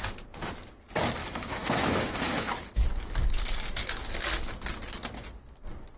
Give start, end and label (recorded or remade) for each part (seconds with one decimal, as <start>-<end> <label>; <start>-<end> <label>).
0.0-1.2 recorded; 1.2-2.7 remade; 2.7-6.0 recorded